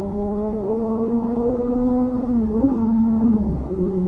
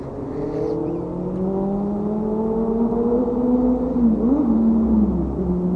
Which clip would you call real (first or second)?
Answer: second